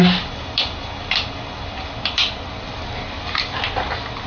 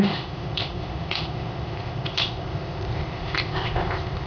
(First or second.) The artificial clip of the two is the second